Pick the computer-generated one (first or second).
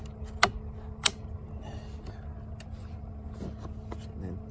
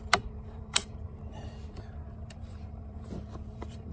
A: second